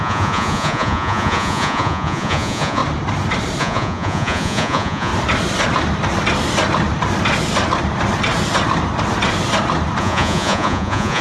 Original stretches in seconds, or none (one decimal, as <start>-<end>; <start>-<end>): 2.8-3.6; 5.1-10.0

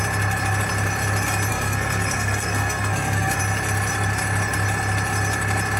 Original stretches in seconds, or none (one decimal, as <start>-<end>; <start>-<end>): 0.0-1.5; 3.4-5.8

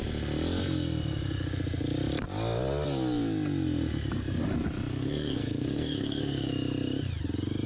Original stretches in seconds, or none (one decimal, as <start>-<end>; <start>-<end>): 0.0-4.9; 6.5-7.7

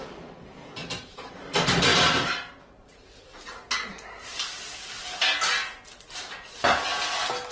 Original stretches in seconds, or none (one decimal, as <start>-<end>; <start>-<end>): 0.0-0.8; 1.3-1.9; 3.5-7.5